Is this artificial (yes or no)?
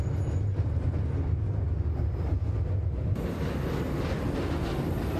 no